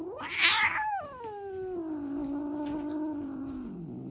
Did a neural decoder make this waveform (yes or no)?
no